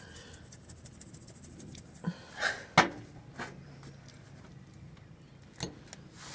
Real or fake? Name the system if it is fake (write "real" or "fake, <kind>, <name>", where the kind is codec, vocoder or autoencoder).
real